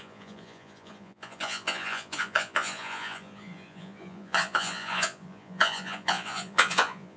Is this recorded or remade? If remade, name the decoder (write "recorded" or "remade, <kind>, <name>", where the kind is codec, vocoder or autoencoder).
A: remade, vocoder, Vocos